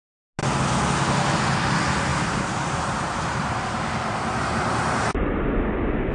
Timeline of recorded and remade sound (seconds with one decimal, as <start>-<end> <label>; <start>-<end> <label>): 0.0-2.1 recorded; 2.1-6.1 remade